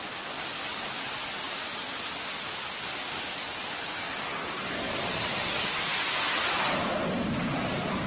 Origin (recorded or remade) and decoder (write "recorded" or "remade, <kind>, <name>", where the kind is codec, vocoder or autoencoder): recorded